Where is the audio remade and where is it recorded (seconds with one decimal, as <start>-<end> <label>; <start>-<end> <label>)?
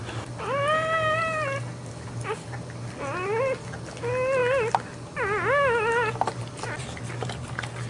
0.0-7.9 recorded